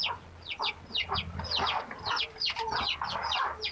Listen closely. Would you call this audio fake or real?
real